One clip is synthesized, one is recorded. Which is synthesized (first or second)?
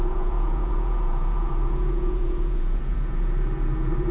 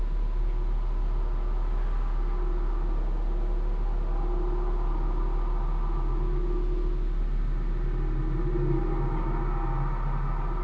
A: first